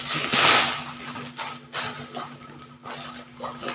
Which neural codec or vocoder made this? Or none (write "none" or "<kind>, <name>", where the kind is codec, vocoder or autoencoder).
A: none